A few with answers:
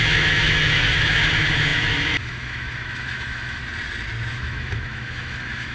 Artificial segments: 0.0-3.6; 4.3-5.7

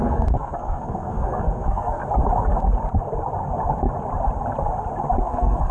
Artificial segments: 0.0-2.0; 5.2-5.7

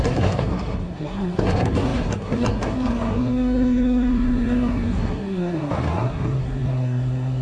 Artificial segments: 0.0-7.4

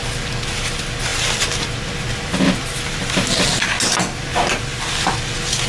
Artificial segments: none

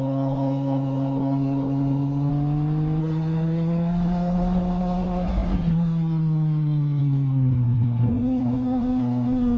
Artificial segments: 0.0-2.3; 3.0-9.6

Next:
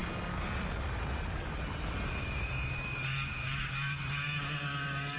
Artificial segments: 2.2-5.2

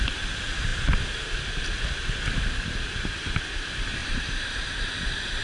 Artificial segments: 4.0-4.7

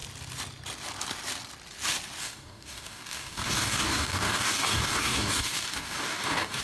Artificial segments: 2.2-6.6